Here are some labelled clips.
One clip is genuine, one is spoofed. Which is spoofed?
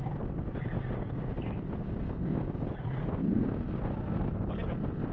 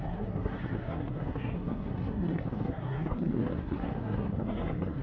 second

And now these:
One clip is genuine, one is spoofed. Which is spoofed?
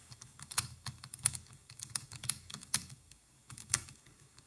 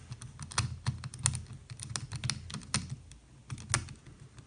first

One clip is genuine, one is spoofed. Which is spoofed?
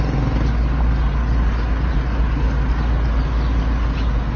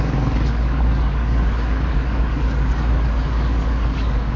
second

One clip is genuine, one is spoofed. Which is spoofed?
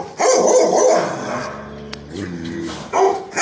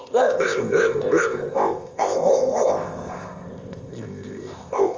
second